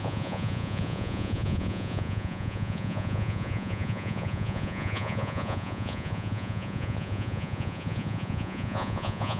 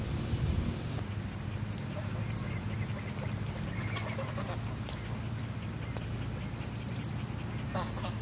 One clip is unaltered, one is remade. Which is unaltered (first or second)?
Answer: second